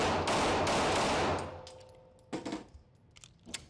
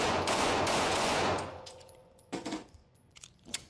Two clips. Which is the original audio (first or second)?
first